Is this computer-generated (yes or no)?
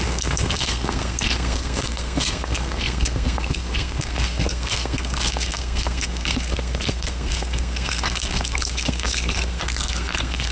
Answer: yes